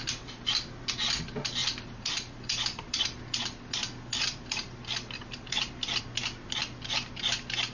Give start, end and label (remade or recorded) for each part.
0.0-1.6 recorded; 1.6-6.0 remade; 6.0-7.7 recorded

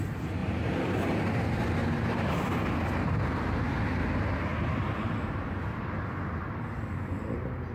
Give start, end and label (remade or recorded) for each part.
0.0-0.4 recorded; 0.4-1.0 remade; 1.0-1.8 recorded; 1.8-2.4 remade; 2.4-4.5 recorded; 4.5-5.8 remade; 5.8-7.7 recorded

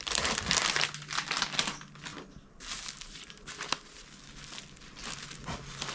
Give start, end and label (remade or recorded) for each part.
0.0-5.9 recorded

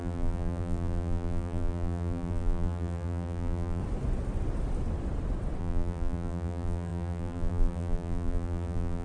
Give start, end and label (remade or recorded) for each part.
0.0-3.8 remade; 3.8-5.6 recorded; 5.6-9.0 remade

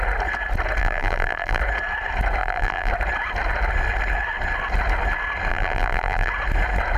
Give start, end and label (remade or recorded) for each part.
0.0-0.8 recorded; 0.8-1.6 remade; 1.6-2.4 recorded; 2.4-2.9 remade; 2.9-5.5 recorded; 5.5-6.3 remade; 6.3-7.0 recorded

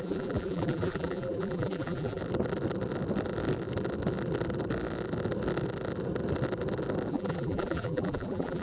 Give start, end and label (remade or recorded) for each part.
0.0-2.2 remade; 2.2-7.1 recorded; 7.1-8.6 remade